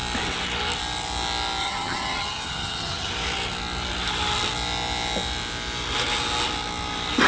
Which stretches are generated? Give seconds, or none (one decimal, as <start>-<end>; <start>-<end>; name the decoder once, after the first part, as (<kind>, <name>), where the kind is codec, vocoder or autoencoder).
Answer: 1.6-3.1 (vocoder, HiFi-GAN)